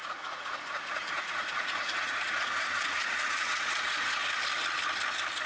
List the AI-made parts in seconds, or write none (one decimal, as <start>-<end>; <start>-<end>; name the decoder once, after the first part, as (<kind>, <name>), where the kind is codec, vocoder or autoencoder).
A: 0.0-4.2 (vocoder, Vocos)